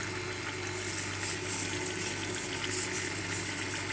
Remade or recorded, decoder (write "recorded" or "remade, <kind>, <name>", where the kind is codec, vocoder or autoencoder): recorded